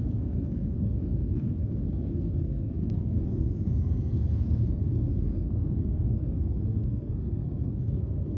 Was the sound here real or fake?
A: fake